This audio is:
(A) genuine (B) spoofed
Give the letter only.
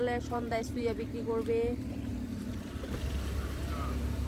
B